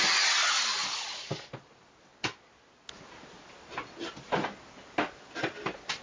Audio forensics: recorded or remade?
recorded